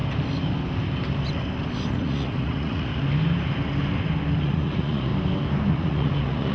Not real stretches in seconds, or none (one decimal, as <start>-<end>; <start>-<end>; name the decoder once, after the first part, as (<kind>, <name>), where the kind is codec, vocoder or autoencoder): 1.9-2.9 (vocoder, Vocos); 4.4-5.1; 5.7-6.5